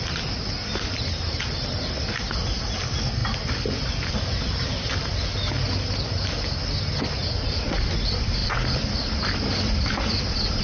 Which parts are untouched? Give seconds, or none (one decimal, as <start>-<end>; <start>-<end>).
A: 0.0-8.4; 10.2-10.6